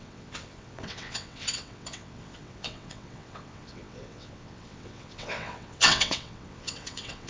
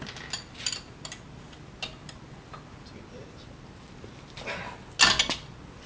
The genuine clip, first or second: second